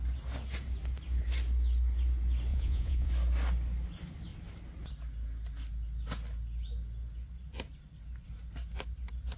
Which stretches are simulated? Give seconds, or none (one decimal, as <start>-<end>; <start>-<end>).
2.5-3.1